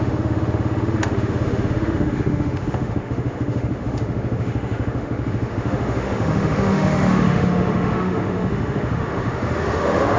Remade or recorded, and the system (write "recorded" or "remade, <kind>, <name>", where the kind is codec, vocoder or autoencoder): remade, autoencoder, DAC-VAE